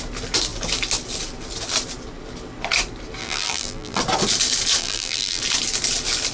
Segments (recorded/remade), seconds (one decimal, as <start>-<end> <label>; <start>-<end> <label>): 0.0-3.2 recorded; 3.2-4.0 remade; 4.0-4.8 recorded; 4.8-5.4 remade; 5.4-6.3 recorded